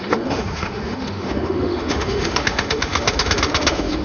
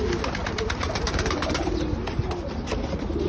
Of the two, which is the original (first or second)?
second